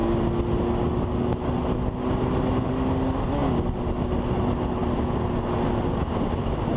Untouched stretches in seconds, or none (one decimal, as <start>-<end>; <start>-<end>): 0.0-6.8